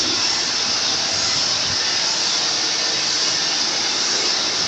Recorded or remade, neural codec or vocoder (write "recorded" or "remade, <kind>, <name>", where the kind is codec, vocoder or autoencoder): recorded